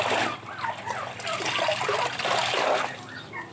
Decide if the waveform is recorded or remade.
recorded